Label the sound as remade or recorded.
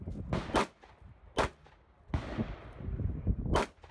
recorded